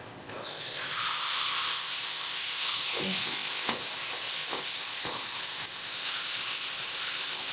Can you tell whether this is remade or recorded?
remade